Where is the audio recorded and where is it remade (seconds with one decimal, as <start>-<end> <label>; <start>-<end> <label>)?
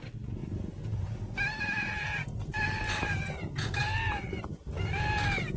0.0-3.8 recorded; 3.8-5.6 remade